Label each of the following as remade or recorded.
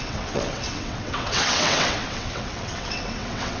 remade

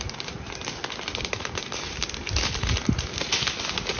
recorded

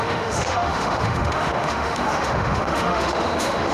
remade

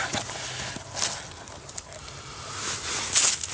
recorded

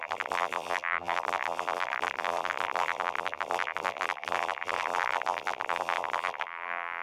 remade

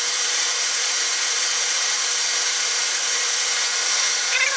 remade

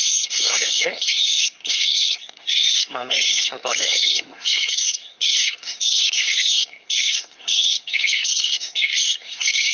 remade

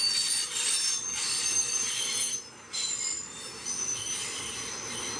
recorded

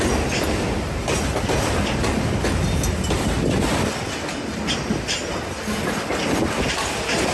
recorded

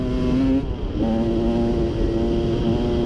recorded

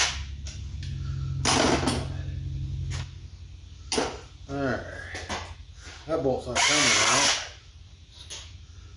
recorded